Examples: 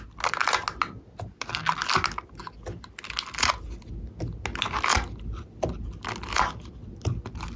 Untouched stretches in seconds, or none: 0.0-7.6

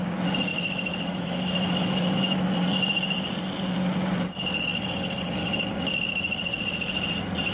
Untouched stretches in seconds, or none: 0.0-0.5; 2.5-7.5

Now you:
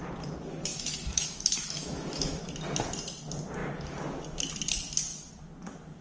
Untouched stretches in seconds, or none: 0.0-0.7; 2.4-6.0

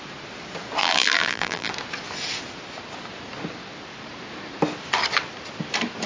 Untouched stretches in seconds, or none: 0.0-0.8; 1.7-6.1